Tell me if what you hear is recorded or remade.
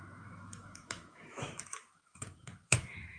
remade